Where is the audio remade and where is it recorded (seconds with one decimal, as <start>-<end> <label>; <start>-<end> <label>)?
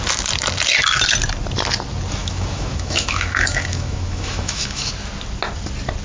0.0-2.2 recorded; 2.2-4.9 remade; 4.9-6.0 recorded